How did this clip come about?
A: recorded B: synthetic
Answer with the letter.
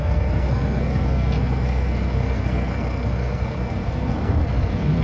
B